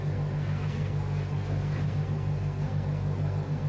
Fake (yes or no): yes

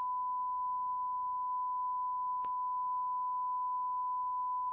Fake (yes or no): yes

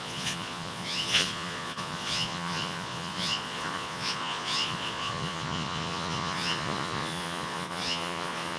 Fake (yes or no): yes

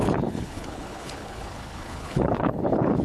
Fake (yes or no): yes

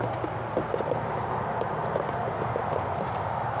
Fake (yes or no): no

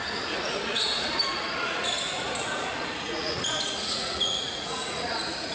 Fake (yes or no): yes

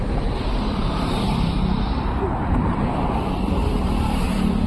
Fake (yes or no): yes